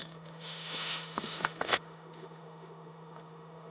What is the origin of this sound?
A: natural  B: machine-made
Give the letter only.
B